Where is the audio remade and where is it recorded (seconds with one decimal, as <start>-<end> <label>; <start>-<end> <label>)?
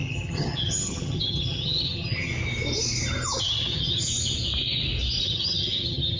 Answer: 0.0-2.3 remade; 2.3-3.4 recorded; 3.4-4.0 remade; 4.0-5.2 recorded; 5.2-6.2 remade